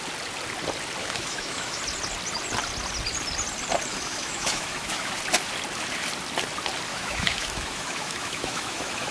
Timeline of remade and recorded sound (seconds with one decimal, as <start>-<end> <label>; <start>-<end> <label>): 0.0-1.0 recorded; 1.0-1.8 remade; 1.8-3.9 recorded; 3.9-5.1 remade; 5.1-6.9 recorded; 6.9-9.1 remade